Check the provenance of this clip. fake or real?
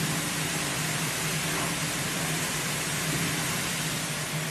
real